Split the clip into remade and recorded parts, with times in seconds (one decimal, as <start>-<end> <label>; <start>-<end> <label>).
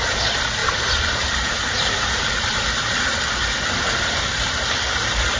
0.0-0.6 recorded; 0.6-2.2 remade; 2.2-5.4 recorded